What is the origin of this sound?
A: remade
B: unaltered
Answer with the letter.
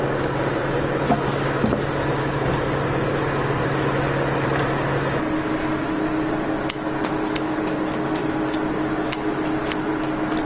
B